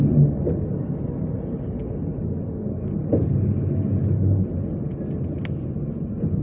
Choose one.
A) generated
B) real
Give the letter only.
B